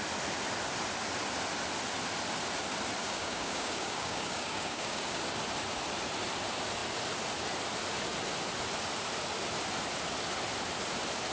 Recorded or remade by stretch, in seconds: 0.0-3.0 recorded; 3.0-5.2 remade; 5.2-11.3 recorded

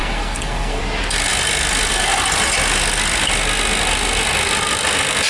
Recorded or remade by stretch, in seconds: 0.0-0.8 remade; 0.8-5.3 recorded

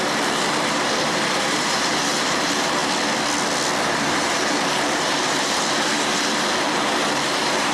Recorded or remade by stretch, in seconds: 0.0-2.8 remade; 2.8-3.8 recorded; 3.8-7.7 remade

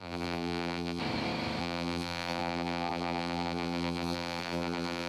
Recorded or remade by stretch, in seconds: 0.0-1.0 remade; 1.0-1.6 recorded; 1.6-5.1 remade